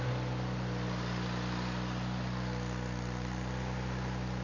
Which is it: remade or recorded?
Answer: recorded